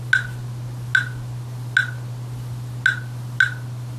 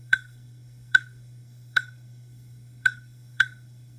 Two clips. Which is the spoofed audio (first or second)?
second